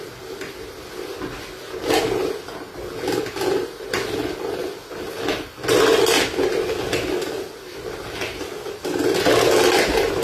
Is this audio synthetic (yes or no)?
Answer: no